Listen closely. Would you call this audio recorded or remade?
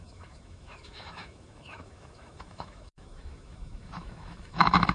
remade